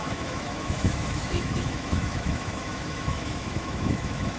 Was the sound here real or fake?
fake